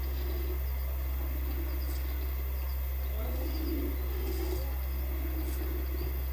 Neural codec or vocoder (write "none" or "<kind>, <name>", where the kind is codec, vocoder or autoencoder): none